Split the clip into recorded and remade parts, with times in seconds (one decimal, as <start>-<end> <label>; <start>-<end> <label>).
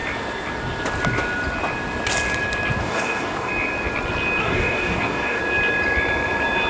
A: 0.0-2.8 recorded; 2.8-3.5 remade; 3.5-4.4 recorded; 4.4-5.4 remade; 5.4-6.7 recorded